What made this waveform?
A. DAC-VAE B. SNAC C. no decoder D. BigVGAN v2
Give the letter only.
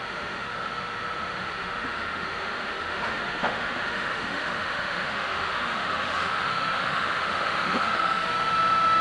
A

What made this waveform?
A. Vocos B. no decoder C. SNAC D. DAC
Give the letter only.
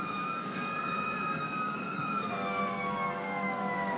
D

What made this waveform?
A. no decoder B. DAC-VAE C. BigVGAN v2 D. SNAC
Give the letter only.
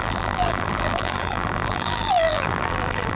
C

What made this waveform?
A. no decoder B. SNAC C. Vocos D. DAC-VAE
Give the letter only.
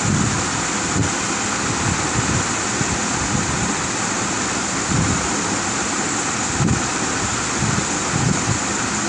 A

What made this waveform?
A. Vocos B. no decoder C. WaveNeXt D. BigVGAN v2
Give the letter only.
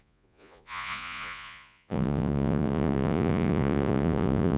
A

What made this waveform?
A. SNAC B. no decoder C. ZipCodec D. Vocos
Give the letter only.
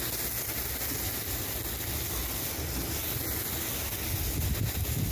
B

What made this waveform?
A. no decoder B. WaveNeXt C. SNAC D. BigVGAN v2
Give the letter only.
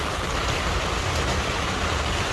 D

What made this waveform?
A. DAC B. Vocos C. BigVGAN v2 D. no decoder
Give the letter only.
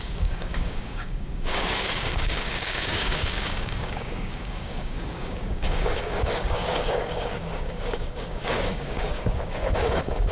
A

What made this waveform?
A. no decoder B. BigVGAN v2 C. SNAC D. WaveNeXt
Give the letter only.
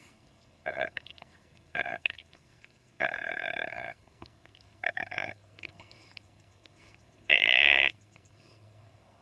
C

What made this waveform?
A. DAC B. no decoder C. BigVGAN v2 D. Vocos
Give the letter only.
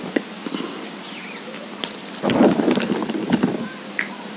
B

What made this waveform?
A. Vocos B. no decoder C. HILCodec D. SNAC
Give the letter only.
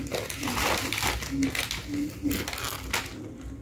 B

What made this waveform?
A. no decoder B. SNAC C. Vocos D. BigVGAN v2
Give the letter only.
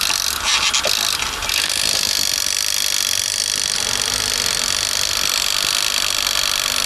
A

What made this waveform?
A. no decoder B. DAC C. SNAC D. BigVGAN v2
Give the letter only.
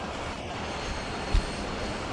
A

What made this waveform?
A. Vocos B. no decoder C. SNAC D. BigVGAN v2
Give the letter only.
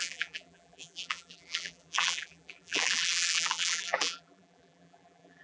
D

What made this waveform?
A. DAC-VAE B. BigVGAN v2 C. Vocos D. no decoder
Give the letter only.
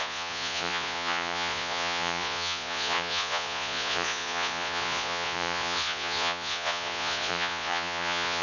C